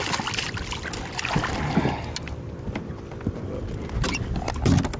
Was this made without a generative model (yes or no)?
yes